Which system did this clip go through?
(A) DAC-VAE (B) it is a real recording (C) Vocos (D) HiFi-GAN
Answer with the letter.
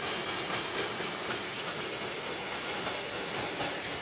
B